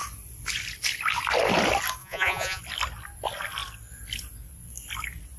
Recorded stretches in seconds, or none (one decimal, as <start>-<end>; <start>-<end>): 0.0-2.0; 2.6-5.4